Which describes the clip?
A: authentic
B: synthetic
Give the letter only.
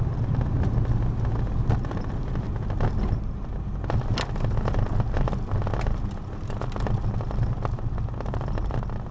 A